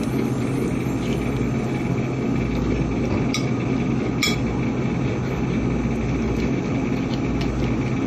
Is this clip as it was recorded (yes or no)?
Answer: yes